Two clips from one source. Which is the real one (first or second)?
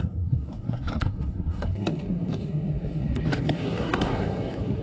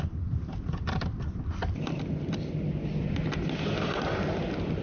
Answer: second